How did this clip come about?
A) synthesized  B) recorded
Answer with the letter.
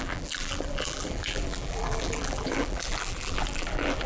A